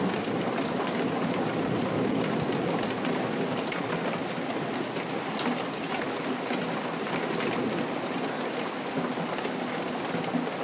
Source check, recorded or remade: recorded